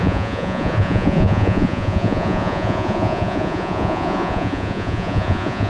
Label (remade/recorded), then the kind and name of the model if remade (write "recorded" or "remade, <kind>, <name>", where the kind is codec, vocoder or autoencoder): remade, vocoder, Vocos